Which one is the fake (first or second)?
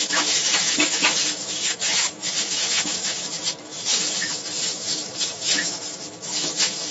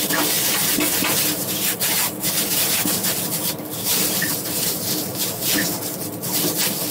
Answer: first